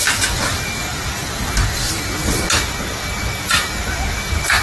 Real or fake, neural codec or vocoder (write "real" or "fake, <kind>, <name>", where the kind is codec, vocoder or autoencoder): real